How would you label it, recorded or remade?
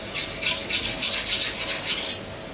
recorded